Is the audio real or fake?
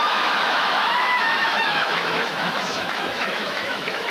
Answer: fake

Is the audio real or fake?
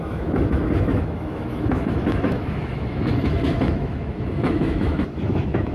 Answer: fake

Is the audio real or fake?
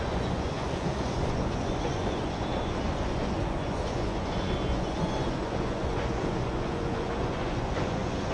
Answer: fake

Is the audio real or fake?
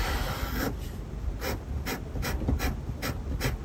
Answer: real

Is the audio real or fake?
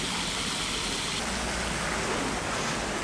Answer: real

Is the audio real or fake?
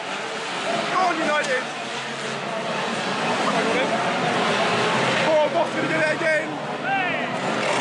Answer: real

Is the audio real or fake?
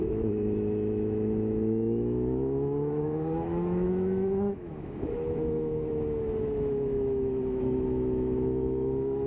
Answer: fake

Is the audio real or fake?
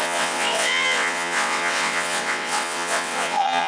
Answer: fake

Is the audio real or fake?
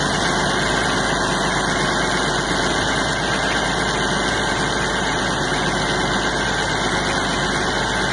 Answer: real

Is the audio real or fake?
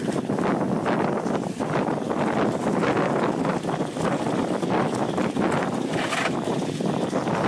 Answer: real